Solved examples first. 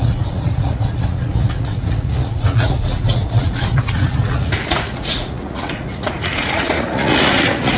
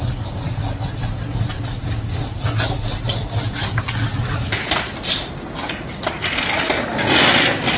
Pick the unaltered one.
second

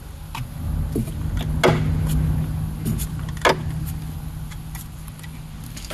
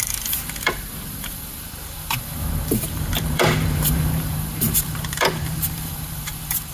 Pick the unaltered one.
first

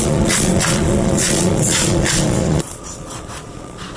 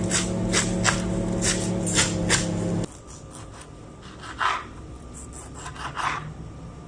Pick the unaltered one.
second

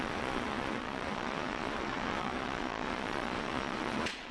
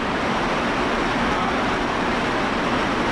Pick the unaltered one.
second